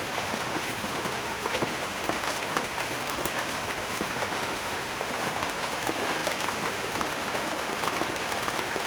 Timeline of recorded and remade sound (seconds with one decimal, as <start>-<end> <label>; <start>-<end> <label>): 0.0-8.9 remade